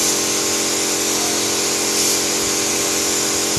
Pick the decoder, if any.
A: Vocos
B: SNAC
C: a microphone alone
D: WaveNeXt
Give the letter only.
C